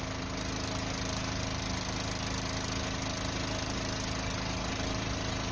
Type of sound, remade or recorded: recorded